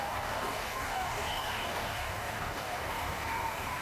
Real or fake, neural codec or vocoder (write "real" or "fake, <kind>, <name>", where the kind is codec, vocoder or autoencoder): fake, codec, DAC